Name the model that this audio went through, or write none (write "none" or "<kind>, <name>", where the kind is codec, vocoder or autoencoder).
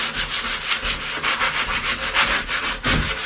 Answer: none